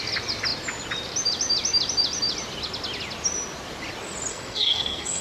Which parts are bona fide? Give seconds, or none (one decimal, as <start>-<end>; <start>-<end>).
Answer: 0.0-4.3